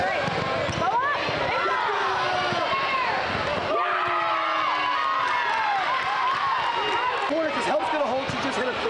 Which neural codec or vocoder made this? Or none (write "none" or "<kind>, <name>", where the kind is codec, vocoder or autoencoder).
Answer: none